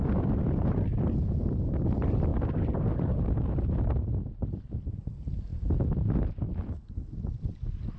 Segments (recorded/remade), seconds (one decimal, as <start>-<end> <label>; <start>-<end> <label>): 0.0-8.0 recorded